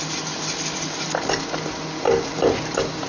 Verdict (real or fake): real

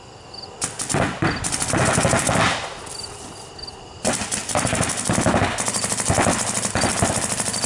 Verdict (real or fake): real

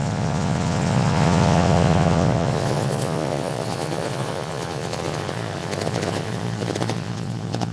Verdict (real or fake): fake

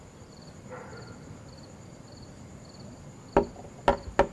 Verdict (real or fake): real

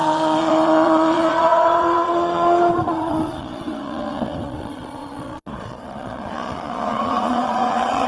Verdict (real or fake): fake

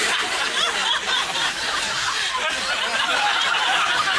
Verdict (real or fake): real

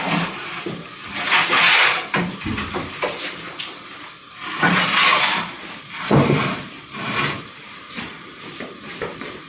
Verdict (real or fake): fake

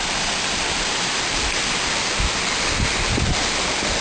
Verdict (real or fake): real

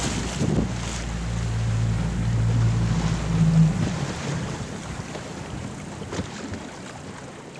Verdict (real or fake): real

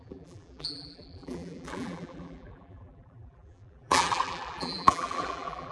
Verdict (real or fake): fake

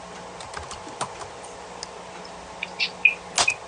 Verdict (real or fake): real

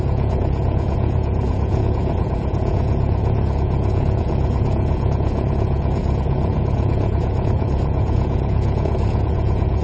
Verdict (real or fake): fake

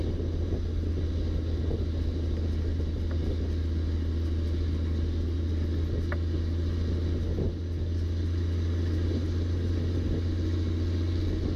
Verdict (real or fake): real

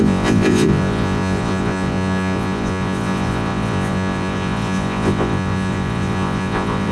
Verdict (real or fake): fake